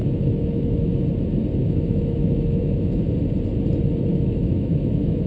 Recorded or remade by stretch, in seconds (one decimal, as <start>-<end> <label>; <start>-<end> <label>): 0.0-1.0 remade; 1.0-1.6 recorded; 1.6-3.1 remade; 3.1-4.1 recorded; 4.1-5.3 remade